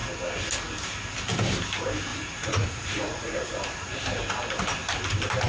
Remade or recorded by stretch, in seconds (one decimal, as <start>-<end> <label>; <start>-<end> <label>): 0.0-2.1 recorded; 2.1-3.4 remade; 3.4-5.5 recorded